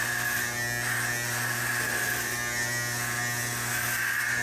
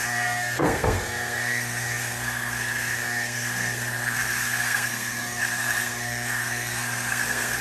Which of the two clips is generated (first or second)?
second